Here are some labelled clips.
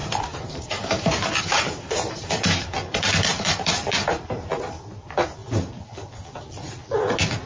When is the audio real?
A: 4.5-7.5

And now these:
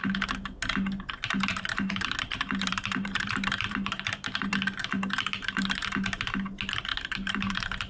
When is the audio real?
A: 0.0-1.5; 4.5-6.9

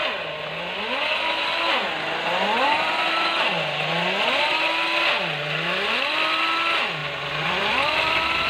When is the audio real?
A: 0.0-7.0

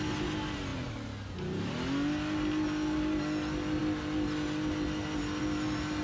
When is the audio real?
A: 0.0-6.0

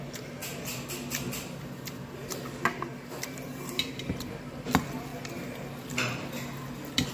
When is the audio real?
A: 0.0-7.1

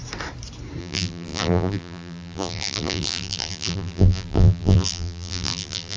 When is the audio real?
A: 0.0-0.8